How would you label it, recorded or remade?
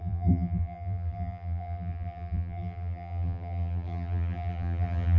remade